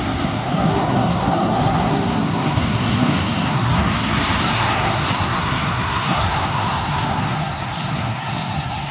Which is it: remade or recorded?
remade